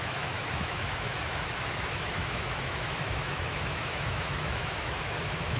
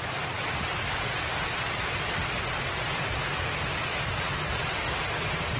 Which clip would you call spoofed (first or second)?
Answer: first